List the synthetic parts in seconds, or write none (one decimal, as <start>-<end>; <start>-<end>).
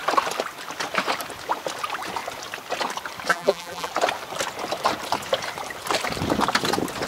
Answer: 3.3-3.9